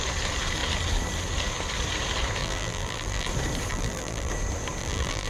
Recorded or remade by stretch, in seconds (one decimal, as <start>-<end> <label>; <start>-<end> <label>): 0.0-2.4 recorded; 2.4-3.3 remade; 3.3-3.7 recorded; 3.7-4.3 remade; 4.3-4.8 recorded; 4.8-5.3 remade

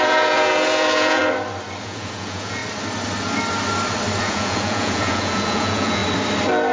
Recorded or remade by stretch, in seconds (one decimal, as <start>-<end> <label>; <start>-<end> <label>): 0.0-1.2 remade; 1.2-1.8 recorded; 1.8-2.6 remade; 2.6-4.2 recorded; 4.2-6.0 remade; 6.0-6.7 recorded

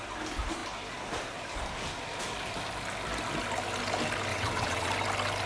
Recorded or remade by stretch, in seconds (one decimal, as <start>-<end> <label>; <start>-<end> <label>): 0.0-4.3 recorded; 4.3-4.9 remade; 4.9-5.5 recorded

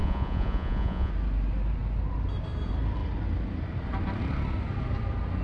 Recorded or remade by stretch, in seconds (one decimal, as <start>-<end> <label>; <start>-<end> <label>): 0.0-1.1 remade; 1.1-5.4 recorded